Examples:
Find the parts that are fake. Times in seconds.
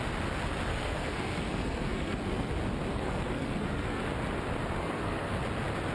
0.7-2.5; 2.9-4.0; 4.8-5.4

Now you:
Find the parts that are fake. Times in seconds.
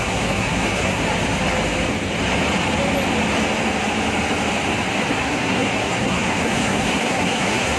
0.0-1.0; 5.1-7.8